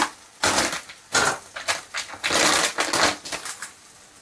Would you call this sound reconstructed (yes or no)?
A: no